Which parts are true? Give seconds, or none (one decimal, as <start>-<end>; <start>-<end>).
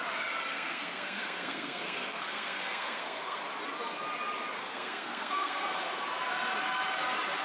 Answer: 0.0-0.5; 3.4-4.6; 6.0-7.4